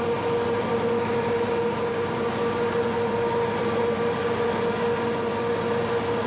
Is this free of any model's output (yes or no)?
yes